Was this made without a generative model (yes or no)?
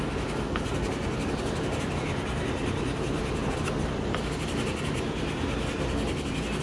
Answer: yes